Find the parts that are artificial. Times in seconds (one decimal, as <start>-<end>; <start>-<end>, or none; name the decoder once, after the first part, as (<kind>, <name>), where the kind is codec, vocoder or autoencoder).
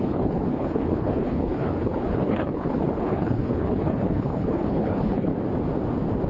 0.0-5.3 (codec, HILCodec)